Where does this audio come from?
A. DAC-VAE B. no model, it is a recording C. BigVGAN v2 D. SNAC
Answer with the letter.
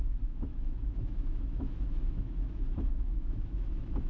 A